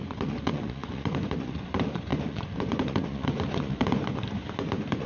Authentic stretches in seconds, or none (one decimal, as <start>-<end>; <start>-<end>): none